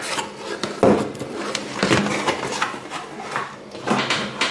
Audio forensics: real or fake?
real